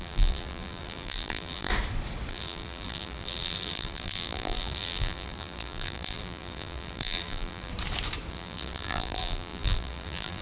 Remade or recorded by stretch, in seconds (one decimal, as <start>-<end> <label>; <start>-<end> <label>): 0.0-1.7 remade; 1.7-2.3 recorded; 2.3-7.7 remade; 7.7-8.3 recorded; 8.3-10.4 remade

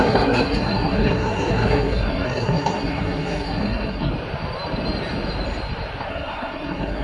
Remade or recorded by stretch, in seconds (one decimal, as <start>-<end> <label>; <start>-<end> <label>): 0.0-4.1 remade; 4.1-6.1 recorded; 6.1-7.0 remade

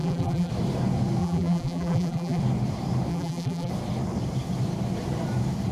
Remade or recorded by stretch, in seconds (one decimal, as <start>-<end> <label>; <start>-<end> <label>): 0.0-0.5 remade; 0.5-1.2 recorded; 1.2-2.4 remade; 2.4-3.1 recorded; 3.1-3.7 remade; 3.7-5.7 recorded

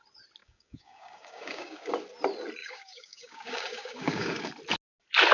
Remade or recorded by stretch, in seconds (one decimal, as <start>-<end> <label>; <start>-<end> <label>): 0.0-0.4 recorded; 0.4-1.9 remade; 1.9-2.6 recorded; 2.6-4.5 remade; 4.5-5.3 recorded

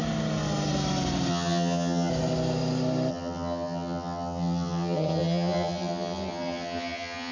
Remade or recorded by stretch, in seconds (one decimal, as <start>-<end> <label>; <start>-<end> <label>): 0.0-1.3 recorded; 1.3-2.1 remade; 2.1-3.1 recorded; 3.1-7.3 remade

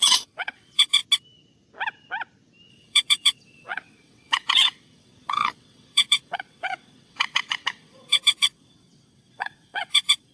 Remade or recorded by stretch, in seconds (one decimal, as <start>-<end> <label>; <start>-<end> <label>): 0.0-1.0 remade; 1.0-2.7 recorded; 2.7-10.3 remade

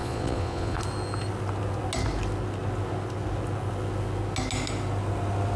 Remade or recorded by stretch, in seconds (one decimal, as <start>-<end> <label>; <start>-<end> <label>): 0.0-0.8 remade; 0.8-5.6 recorded

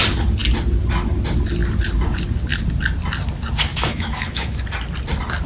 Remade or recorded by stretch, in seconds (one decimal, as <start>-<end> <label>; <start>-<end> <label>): 0.0-3.7 recorded; 3.7-4.6 remade; 4.6-5.5 recorded